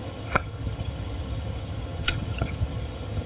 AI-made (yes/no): yes